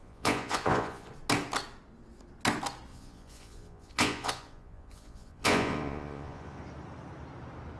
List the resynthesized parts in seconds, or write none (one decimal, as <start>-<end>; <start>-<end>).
0.0-1.1; 2.9-6.6